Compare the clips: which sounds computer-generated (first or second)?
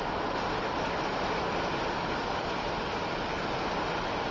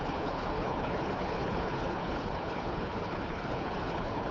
second